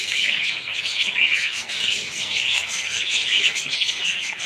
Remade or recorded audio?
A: remade